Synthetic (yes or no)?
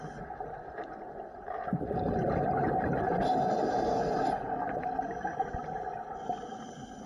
no